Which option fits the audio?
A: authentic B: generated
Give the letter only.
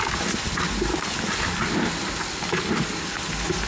A